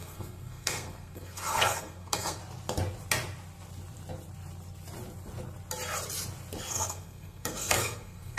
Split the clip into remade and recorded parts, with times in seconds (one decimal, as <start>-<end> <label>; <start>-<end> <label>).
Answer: 0.0-2.4 remade; 2.4-6.7 recorded; 6.7-8.4 remade